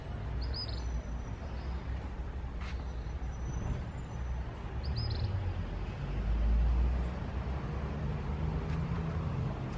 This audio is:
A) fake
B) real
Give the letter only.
B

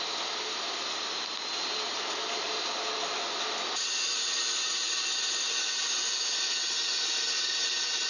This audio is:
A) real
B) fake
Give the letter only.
A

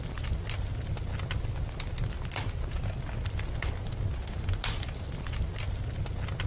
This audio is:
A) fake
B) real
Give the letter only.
B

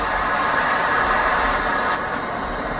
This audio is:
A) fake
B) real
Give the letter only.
A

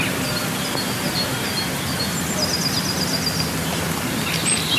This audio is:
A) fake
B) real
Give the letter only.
A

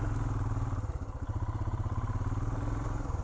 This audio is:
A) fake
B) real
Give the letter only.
A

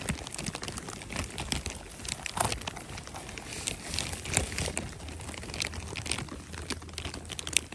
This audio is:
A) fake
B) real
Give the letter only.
B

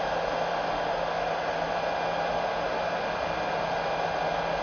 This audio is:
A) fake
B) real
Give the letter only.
B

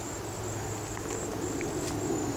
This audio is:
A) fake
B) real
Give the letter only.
B